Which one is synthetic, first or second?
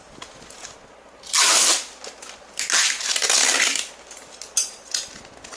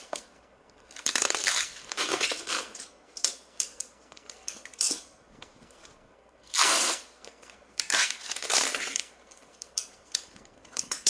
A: second